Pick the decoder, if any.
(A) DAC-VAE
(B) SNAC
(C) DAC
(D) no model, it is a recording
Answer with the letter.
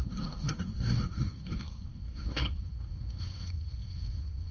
B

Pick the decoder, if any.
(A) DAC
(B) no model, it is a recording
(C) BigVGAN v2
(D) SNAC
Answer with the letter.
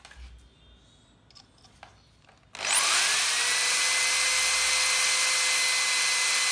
B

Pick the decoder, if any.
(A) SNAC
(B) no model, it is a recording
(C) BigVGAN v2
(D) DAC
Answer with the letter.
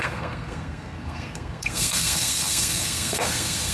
A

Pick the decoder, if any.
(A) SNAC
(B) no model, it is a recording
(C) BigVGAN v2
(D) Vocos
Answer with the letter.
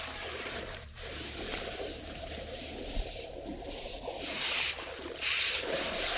C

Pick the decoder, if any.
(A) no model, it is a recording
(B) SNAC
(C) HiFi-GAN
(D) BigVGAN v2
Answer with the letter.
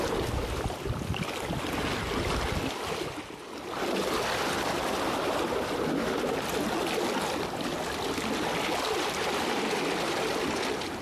A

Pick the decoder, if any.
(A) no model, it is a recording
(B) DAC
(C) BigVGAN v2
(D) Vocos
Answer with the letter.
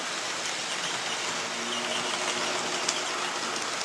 A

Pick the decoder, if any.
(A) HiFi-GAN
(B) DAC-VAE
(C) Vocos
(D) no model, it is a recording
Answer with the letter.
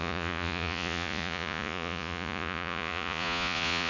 C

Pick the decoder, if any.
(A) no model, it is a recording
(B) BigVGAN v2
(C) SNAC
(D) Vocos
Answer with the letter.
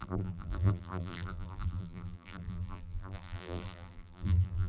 B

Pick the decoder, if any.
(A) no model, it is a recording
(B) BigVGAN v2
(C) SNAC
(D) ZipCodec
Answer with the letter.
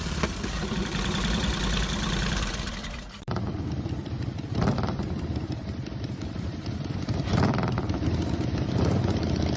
B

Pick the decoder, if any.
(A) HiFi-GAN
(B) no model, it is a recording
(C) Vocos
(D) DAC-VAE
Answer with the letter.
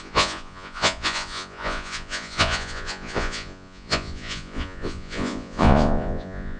C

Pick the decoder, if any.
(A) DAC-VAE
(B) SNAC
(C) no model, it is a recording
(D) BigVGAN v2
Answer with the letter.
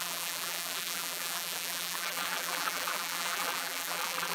D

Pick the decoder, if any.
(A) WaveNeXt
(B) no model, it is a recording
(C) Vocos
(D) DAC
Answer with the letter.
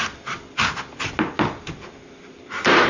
B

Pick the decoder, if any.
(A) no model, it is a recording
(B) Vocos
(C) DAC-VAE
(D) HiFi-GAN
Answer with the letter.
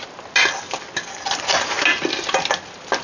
A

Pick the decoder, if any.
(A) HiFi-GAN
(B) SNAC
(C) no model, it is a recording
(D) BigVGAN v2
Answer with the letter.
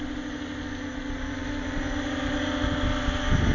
C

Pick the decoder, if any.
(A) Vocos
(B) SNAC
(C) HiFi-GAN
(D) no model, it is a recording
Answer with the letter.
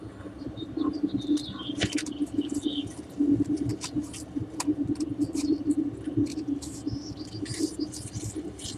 D